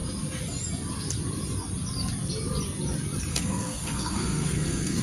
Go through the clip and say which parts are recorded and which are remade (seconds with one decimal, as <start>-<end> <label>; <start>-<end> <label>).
0.0-3.3 recorded; 3.3-5.0 remade

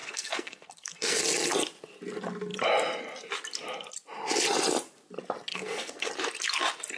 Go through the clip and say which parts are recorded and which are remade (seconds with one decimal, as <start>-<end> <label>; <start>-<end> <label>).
0.0-1.2 remade; 1.2-5.5 recorded; 5.5-6.1 remade; 6.1-7.0 recorded

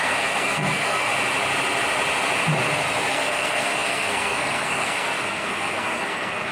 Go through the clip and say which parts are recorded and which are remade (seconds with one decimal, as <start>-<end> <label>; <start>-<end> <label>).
0.0-1.1 remade; 1.1-3.1 recorded; 3.1-6.5 remade

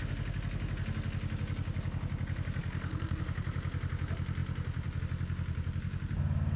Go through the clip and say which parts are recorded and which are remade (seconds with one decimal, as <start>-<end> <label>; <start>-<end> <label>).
0.0-2.6 recorded; 2.6-3.2 remade; 3.2-6.6 recorded

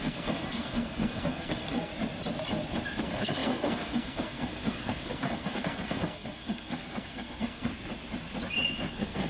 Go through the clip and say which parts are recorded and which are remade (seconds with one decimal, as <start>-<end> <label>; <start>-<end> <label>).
0.0-1.9 remade; 1.9-3.0 recorded; 3.0-7.7 remade; 7.7-8.9 recorded; 8.9-9.3 remade

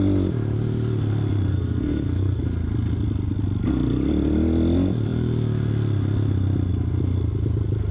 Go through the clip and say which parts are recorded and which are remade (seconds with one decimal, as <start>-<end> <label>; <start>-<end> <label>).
0.0-1.5 recorded; 1.5-2.4 remade; 2.4-7.9 recorded

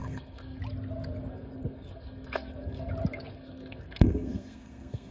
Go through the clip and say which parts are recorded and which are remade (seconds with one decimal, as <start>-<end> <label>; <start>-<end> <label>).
0.0-0.6 remade; 0.6-1.3 recorded; 1.3-2.9 remade; 2.9-3.3 recorded; 3.3-5.1 remade

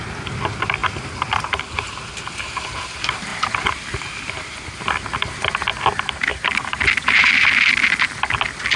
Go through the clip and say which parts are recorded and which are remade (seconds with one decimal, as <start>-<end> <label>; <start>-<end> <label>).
0.0-8.8 recorded